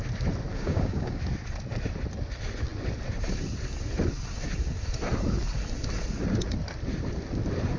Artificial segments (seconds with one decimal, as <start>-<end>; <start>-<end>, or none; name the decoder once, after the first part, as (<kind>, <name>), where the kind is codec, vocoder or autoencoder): 0.5-1.2 (codec, DAC)